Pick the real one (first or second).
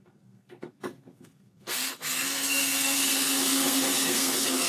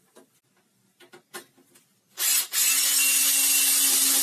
second